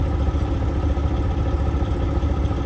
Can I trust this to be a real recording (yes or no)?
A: yes